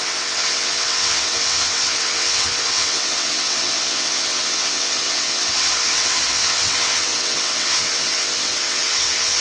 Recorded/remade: remade